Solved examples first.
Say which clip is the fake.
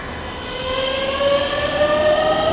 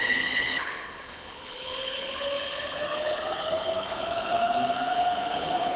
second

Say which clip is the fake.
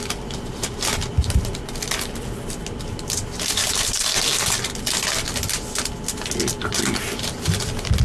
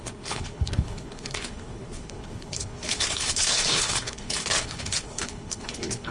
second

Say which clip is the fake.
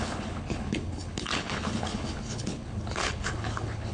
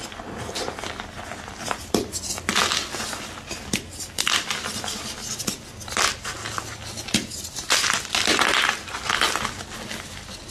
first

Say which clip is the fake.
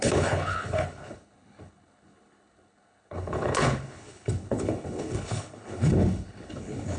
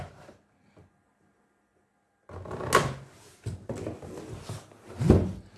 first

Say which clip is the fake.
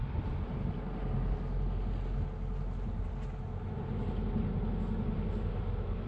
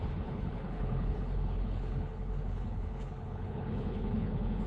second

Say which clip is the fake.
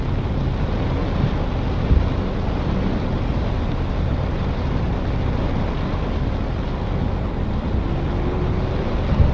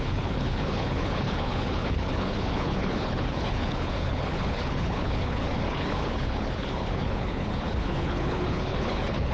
second